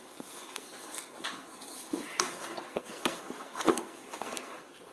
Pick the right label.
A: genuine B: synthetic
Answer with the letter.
B